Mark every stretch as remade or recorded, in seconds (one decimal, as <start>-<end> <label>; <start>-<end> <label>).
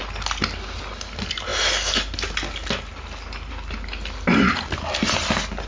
0.0-5.7 recorded